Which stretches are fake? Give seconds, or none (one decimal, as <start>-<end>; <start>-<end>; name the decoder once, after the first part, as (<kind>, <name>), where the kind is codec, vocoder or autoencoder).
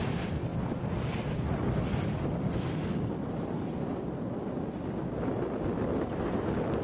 none